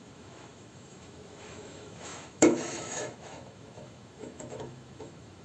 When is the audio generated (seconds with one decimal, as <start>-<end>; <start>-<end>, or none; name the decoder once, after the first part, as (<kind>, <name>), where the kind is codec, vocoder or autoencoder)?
0.0-5.4 (autoencoder, DAC-VAE)